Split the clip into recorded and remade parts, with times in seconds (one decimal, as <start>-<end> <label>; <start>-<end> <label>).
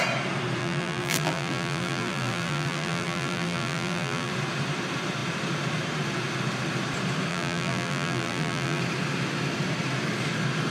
0.0-0.6 recorded; 0.6-4.3 remade; 4.3-7.3 recorded; 7.3-8.8 remade; 8.8-10.7 recorded